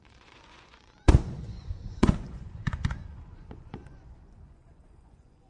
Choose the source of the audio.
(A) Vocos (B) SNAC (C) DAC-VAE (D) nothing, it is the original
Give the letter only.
A